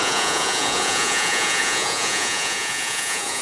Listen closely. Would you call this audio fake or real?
fake